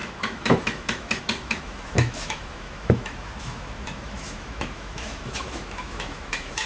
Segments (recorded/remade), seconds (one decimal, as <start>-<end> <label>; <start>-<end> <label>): 0.0-6.7 remade